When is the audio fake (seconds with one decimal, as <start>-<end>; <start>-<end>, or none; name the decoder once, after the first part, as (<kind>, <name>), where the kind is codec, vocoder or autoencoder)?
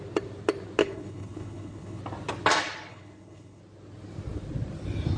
0.8-2.0 (codec, HILCodec); 2.9-3.6